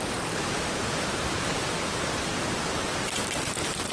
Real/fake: fake